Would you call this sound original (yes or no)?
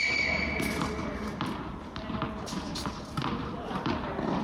yes